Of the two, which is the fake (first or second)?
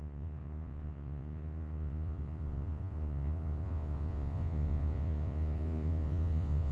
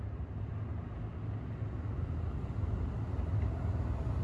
first